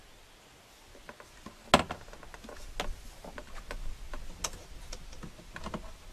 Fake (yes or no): no